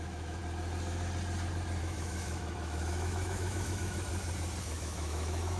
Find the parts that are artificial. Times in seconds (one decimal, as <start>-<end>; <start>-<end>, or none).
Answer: 0.0-0.4; 1.8-4.1; 4.6-5.6